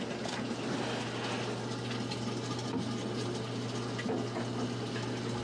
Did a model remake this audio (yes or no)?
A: no